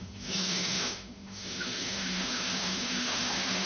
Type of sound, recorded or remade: remade